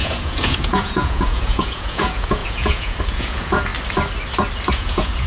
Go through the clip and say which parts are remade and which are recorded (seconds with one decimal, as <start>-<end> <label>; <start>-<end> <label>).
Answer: 0.0-3.7 remade; 3.7-4.7 recorded; 4.7-5.3 remade